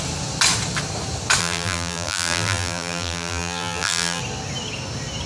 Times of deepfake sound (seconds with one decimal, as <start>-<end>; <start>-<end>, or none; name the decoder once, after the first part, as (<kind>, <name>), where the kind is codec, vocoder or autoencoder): 1.4-4.2 (vocoder, BigVGAN v2)